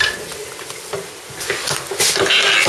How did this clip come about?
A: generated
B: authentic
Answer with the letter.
B